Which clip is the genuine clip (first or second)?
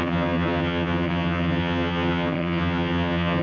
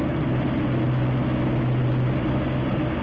second